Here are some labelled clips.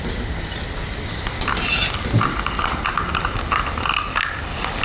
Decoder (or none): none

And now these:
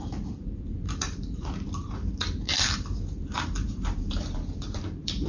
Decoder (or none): vocoder, BigVGAN v2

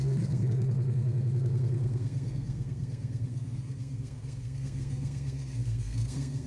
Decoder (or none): codec, SNAC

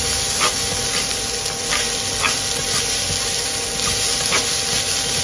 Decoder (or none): none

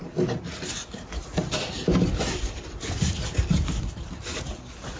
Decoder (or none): none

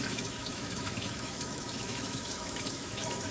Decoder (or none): autoencoder, DAC-VAE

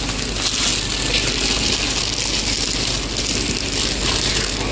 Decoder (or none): none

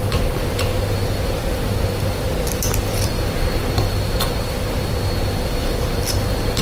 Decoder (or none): none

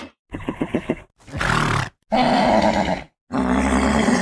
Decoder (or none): none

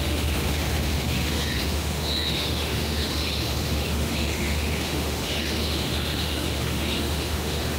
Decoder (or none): autoencoder, DAC-VAE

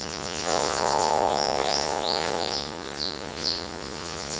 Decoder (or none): vocoder, Vocos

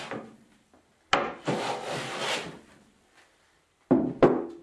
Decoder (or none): none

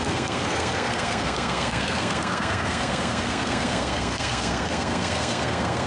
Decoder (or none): codec, SNAC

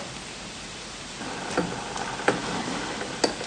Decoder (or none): none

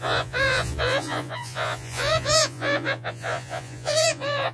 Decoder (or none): vocoder, Vocos